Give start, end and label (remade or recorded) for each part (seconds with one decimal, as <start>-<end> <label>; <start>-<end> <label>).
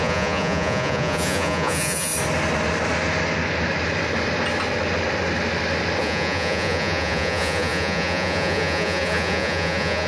0.0-2.1 remade; 2.1-6.0 recorded; 6.0-10.1 remade